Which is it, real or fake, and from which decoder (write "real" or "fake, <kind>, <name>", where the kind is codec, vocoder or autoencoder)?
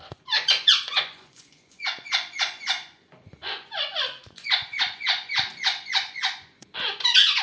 fake, vocoder, Vocos